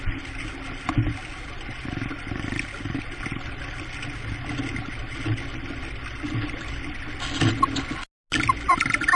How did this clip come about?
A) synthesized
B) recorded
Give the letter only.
B